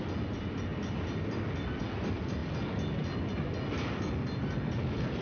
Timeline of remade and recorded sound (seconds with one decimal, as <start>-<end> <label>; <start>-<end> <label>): 0.0-5.2 recorded